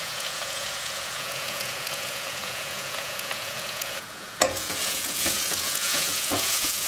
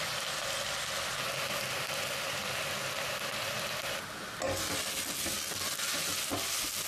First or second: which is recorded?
second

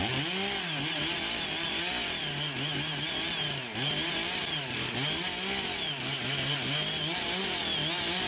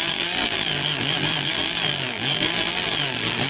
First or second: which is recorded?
first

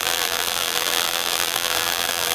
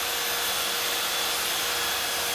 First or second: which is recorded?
second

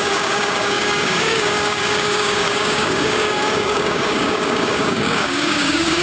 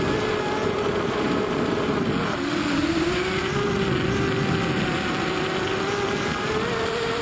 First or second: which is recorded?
second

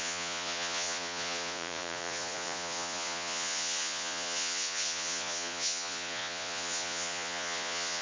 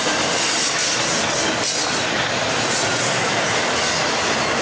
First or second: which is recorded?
second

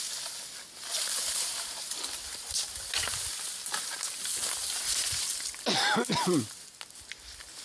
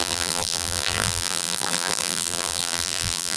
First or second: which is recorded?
first